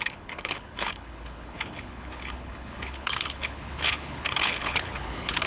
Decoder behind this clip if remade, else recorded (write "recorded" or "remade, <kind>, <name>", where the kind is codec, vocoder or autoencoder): remade, codec, HILCodec